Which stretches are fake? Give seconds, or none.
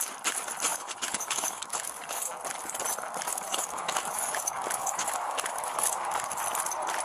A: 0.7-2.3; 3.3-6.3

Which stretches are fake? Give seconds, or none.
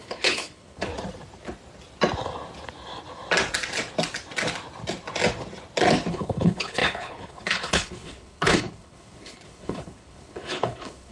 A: 0.0-0.9; 6.1-11.1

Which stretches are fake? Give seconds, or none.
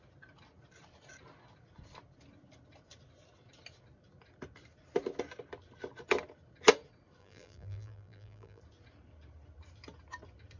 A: 7.2-8.6